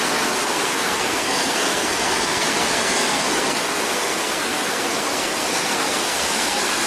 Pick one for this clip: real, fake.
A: fake